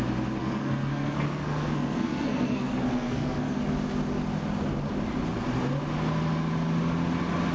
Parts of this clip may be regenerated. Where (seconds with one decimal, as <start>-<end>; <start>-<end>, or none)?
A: 0.4-3.6